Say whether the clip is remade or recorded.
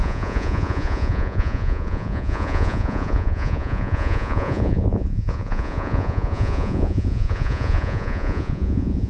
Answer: remade